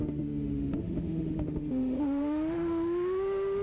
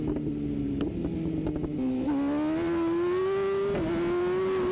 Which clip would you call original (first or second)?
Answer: second